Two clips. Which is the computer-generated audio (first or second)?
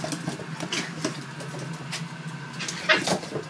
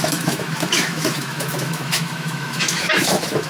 second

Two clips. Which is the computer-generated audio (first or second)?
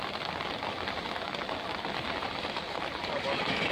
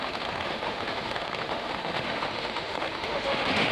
second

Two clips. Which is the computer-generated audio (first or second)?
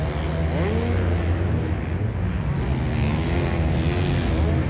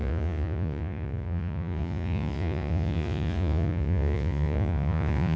second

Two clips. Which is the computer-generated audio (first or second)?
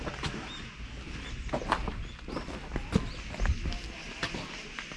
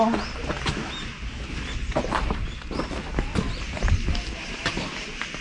second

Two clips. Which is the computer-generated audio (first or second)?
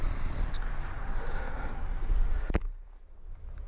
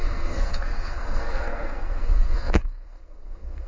second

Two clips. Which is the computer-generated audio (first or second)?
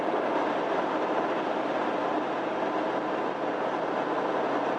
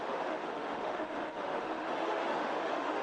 second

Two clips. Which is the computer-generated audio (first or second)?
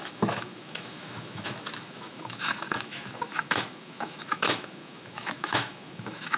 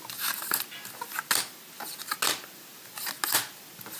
first